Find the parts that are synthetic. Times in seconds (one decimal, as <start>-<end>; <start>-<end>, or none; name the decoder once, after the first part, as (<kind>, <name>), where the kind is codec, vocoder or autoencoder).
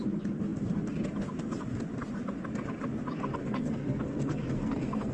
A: 3.4-5.1 (codec, SNAC)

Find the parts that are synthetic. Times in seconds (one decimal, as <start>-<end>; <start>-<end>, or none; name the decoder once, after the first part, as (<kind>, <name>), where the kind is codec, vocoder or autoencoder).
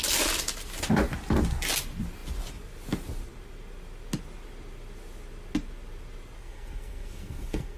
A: 6.4-7.8 (codec, SNAC)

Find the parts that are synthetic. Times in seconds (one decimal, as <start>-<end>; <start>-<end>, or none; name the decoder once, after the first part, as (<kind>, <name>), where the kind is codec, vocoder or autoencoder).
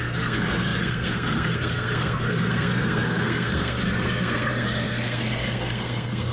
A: 0.0-6.3 (codec, SNAC)